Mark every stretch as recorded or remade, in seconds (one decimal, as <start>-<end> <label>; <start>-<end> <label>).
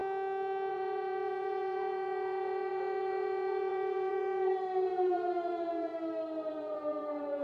0.0-0.7 recorded; 0.7-5.9 remade; 5.9-6.5 recorded; 6.5-7.4 remade